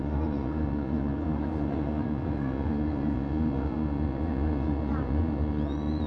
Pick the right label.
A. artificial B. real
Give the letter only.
A